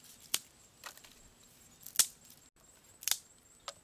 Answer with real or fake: real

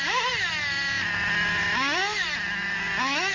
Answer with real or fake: real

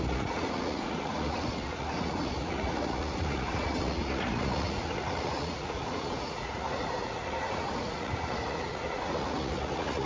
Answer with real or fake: fake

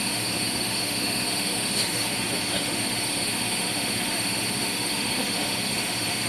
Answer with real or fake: fake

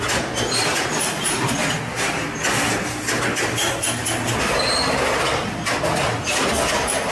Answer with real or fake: real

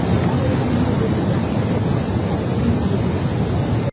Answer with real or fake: real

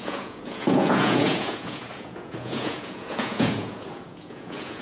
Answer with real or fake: fake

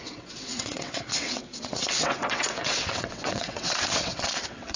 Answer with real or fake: fake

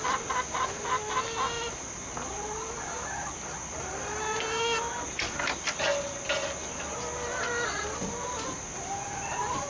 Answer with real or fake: real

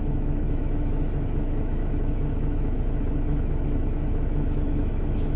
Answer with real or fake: fake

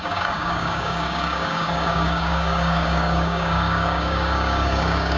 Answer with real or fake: fake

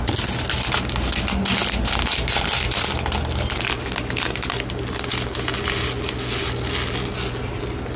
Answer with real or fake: real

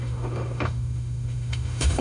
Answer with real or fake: fake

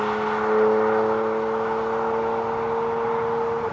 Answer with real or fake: real